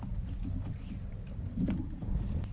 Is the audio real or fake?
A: real